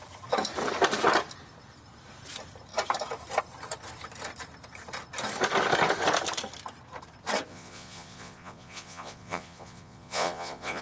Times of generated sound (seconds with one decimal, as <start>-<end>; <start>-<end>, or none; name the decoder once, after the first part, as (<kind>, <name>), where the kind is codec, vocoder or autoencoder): 7.5-10.8 (vocoder, Vocos)